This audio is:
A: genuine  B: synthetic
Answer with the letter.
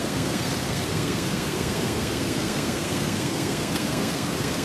B